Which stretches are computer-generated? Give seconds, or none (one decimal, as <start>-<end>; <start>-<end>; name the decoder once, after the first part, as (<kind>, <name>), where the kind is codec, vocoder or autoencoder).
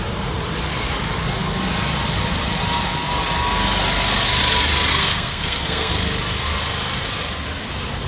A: 4.9-5.9 (codec, SNAC)